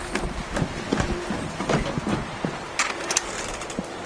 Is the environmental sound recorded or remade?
recorded